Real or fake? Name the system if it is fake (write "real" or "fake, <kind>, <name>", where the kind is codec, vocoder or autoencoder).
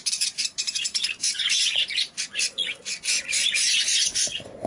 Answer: fake, vocoder, Vocos